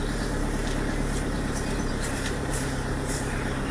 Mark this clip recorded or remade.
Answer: remade